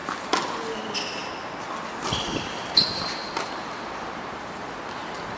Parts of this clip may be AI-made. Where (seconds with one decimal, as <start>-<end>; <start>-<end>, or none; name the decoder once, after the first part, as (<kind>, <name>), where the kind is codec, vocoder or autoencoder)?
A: 0.0-0.7 (vocoder, BigVGAN v2); 2.3-5.4